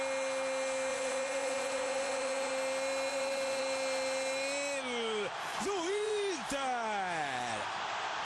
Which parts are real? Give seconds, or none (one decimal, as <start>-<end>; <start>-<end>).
0.0-0.9; 2.5-3.1; 3.6-5.5; 6.1-8.2